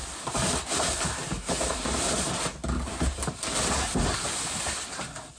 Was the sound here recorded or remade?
recorded